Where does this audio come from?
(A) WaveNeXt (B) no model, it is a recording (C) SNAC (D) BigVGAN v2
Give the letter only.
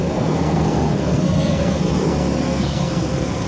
C